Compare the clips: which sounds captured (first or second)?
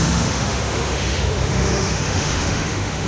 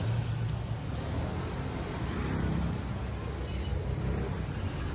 second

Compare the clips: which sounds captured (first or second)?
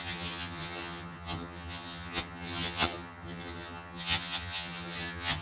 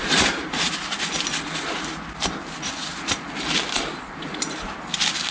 second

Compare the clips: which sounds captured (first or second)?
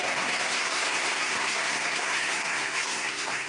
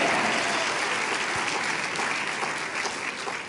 second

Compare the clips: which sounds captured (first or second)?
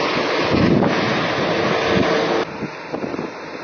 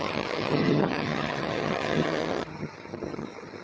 first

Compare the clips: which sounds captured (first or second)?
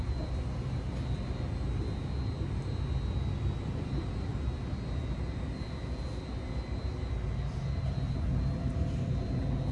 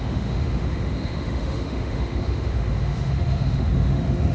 first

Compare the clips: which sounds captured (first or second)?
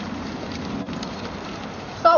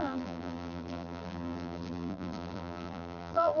first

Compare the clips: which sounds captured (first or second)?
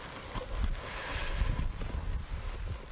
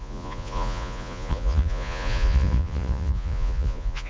first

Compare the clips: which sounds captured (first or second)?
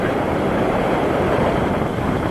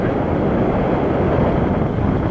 second